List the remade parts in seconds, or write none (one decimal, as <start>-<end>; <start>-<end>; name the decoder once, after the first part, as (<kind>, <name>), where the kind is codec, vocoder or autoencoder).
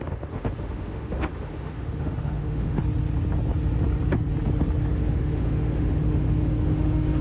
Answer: 0.0-2.8 (autoencoder, DAC-VAE); 4.9-7.2